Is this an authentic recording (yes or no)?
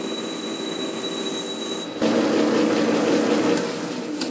yes